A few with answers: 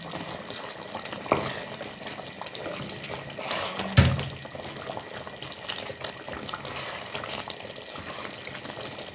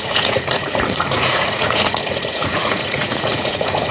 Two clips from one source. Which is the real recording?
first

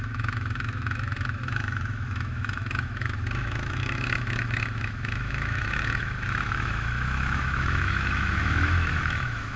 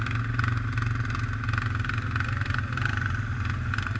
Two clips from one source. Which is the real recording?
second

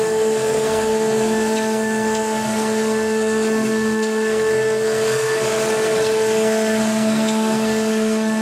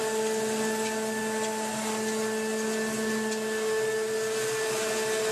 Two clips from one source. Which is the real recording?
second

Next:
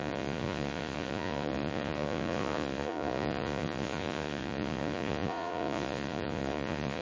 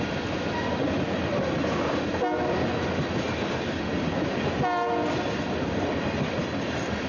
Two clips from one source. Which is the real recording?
second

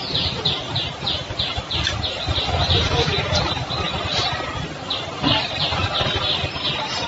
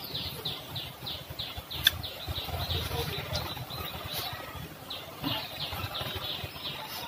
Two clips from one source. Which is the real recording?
second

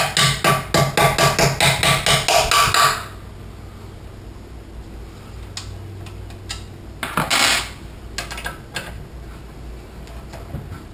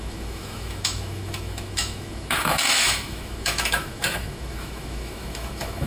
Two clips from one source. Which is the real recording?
first